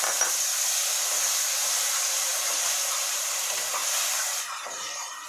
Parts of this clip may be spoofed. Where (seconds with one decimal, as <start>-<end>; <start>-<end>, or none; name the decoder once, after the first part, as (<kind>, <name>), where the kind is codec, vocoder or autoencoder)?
0.0-0.5 (vocoder, BigVGAN v2); 1.6-3.8; 4.4-5.3